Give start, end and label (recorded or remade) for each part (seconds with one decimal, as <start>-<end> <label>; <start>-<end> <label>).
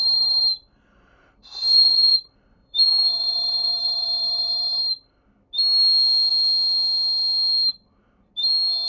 0.0-4.8 remade; 4.8-8.9 recorded